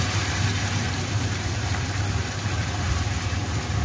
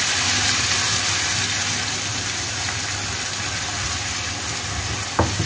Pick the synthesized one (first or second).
first